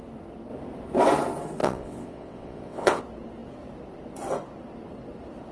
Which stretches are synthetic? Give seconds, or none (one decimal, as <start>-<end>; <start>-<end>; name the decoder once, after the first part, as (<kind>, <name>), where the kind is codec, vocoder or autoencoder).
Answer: 1.6-3.0 (vocoder, WaveNeXt)